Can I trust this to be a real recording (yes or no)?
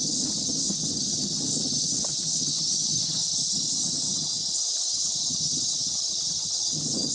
no